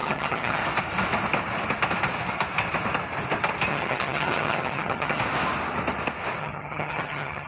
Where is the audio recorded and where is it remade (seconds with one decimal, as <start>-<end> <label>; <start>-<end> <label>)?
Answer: 0.0-0.6 remade; 0.6-3.7 recorded; 3.7-5.2 remade; 5.2-6.4 recorded; 6.4-7.5 remade